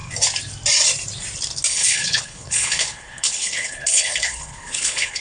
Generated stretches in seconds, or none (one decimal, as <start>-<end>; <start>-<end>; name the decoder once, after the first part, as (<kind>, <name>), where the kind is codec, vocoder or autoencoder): 1.7-5.2 (codec, HILCodec)